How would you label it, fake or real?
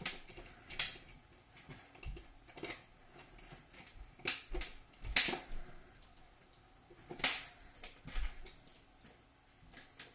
real